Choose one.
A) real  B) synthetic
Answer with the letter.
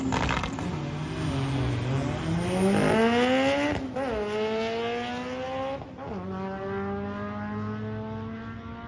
A